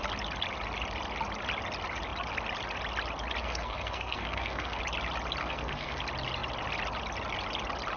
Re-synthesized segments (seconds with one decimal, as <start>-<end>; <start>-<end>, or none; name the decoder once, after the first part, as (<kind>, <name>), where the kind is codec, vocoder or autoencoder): 3.4-4.8 (codec, SNAC); 5.4-6.0